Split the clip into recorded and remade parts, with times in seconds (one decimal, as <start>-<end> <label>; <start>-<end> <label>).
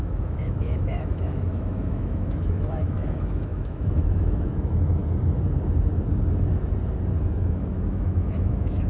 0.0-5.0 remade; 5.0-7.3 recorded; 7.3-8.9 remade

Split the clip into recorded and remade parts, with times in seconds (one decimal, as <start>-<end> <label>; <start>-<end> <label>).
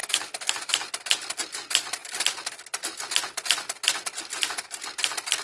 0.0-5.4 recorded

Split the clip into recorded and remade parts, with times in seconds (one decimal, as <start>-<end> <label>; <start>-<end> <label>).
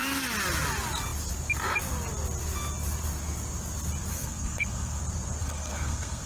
0.0-4.1 recorded; 4.1-5.0 remade; 5.0-5.4 recorded; 5.4-6.3 remade